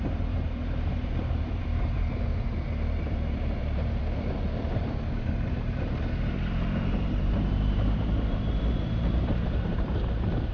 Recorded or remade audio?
remade